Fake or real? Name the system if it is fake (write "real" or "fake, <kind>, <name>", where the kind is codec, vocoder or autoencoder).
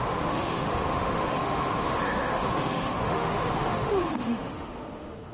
fake, autoencoder, DAC-VAE